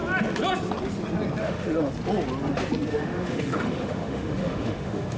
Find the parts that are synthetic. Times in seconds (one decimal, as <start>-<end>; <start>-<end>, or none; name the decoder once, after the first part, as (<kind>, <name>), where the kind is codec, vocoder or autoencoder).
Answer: 1.4-1.9 (autoencoder, DAC-VAE); 2.9-5.2